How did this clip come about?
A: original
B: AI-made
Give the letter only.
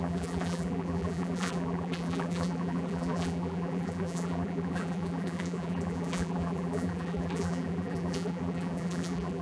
B